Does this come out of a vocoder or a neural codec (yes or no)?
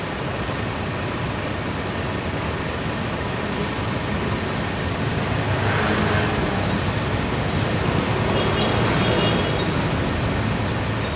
no